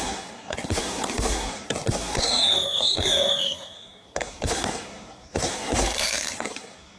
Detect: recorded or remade remade